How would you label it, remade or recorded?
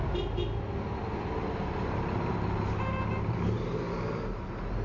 recorded